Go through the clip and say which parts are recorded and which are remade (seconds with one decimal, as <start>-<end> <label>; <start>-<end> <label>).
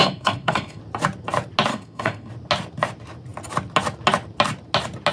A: 0.0-0.8 remade; 0.8-1.7 recorded; 1.7-2.3 remade; 2.3-5.1 recorded